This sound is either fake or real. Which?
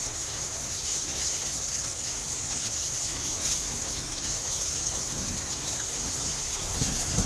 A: fake